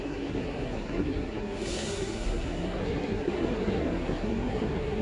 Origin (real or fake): fake